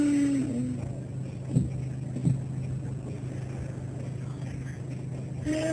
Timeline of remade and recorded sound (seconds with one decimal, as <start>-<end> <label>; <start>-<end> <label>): 0.0-5.7 recorded